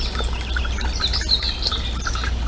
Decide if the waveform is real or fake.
real